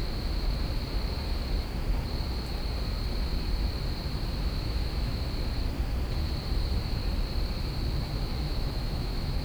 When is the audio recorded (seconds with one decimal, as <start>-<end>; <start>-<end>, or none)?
0.0-4.4; 5.1-6.6; 7.0-8.3